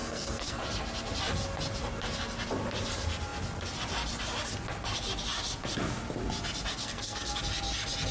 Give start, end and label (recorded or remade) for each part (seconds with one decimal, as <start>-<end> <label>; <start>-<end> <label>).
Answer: 0.0-0.6 remade; 0.6-6.7 recorded; 6.7-7.4 remade; 7.4-8.1 recorded